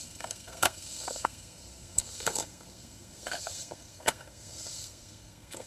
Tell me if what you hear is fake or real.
fake